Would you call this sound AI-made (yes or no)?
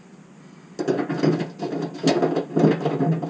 no